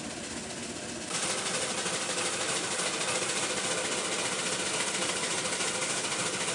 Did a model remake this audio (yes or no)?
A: no